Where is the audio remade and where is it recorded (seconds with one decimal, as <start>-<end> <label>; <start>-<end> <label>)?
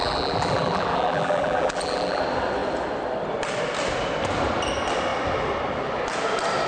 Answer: 0.0-2.2 remade; 2.2-6.7 recorded